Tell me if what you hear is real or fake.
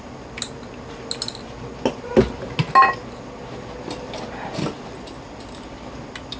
real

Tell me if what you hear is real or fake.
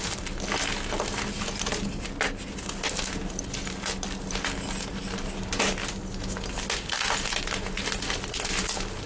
real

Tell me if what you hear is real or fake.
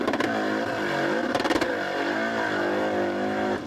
real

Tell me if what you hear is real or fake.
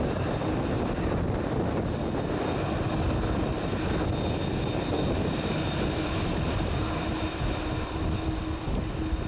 real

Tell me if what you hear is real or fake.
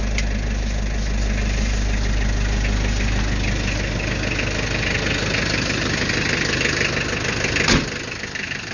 real